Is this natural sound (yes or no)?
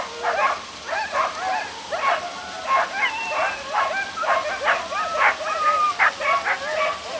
yes